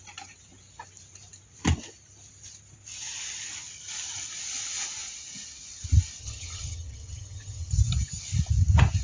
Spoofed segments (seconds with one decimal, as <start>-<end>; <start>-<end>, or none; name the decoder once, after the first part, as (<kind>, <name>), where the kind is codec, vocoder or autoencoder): 6.2-7.7 (vocoder, HiFi-GAN)